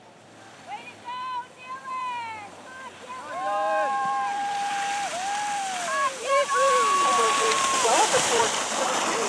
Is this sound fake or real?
fake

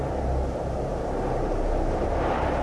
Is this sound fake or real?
fake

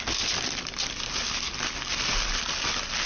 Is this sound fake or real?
fake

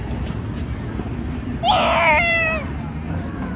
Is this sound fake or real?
fake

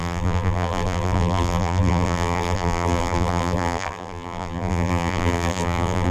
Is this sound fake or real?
fake